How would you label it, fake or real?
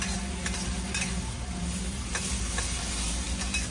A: real